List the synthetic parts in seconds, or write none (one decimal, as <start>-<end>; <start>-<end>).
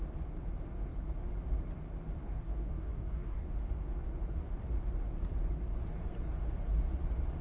2.2-3.5